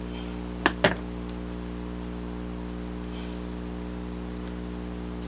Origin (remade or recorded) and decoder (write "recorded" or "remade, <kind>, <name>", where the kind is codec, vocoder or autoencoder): recorded